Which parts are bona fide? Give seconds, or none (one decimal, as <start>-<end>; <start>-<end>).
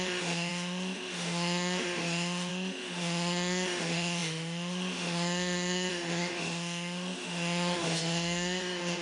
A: none